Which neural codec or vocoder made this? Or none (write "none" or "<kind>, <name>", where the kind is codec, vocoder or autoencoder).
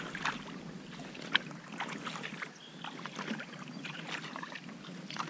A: none